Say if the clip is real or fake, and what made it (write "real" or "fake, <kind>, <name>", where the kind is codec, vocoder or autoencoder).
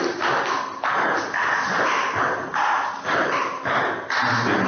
real